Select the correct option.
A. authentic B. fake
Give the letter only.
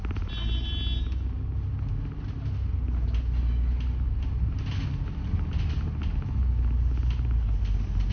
A